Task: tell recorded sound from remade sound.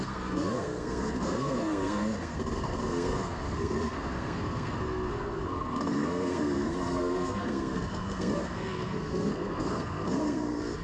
remade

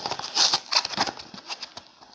recorded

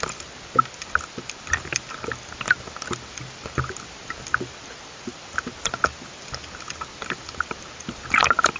recorded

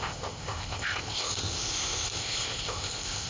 remade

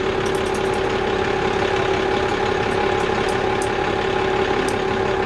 recorded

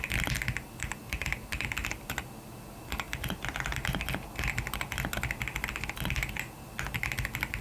recorded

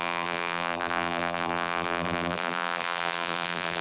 remade